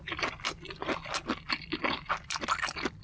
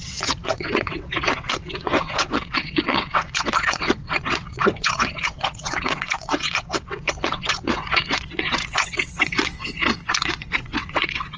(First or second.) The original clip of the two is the first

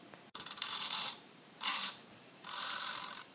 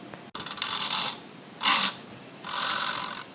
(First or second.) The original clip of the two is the second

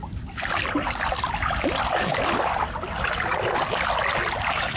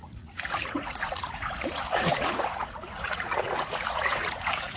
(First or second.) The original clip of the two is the first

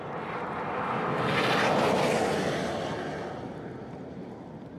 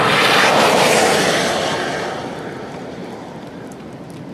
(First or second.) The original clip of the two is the first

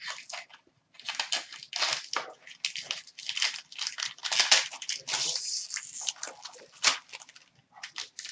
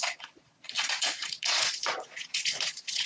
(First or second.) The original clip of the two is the first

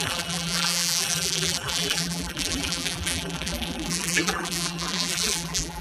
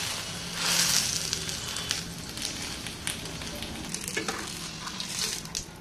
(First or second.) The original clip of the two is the second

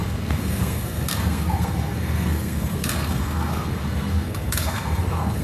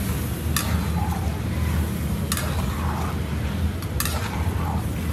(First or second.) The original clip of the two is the second